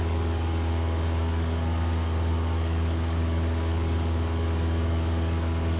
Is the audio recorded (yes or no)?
no